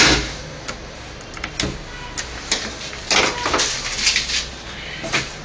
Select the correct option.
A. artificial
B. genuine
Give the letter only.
B